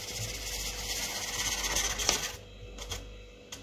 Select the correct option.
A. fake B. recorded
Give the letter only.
B